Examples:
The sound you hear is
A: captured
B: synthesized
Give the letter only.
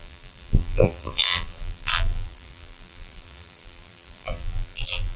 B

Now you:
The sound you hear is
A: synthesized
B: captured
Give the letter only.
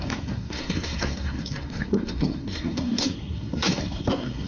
A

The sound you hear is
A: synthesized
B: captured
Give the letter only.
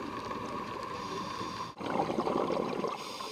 A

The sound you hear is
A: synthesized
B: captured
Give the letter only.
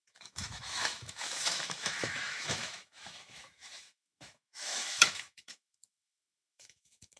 A